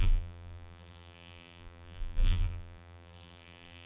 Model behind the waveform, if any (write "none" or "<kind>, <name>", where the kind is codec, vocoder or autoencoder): vocoder, BigVGAN v2